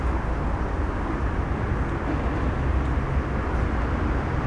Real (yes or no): yes